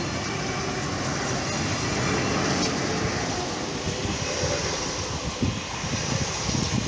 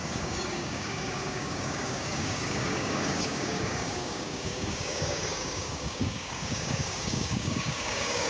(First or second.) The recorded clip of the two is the first